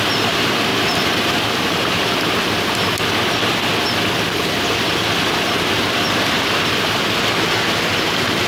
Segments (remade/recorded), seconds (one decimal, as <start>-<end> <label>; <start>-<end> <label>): 0.0-8.5 recorded